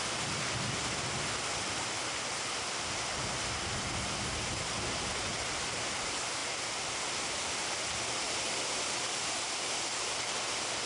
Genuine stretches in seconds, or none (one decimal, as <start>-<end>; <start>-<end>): 0.0-10.9